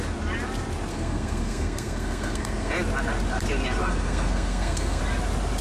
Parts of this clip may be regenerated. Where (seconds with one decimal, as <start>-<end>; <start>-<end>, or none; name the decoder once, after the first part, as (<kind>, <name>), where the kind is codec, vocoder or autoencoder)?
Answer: 0.9-2.7 (codec, SNAC); 3.8-5.0